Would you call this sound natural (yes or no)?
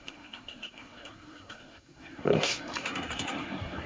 no